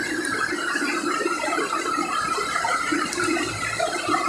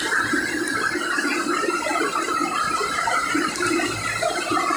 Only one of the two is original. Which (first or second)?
second